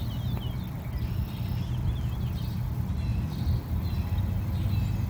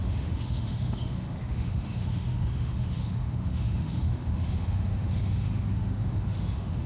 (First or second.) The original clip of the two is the first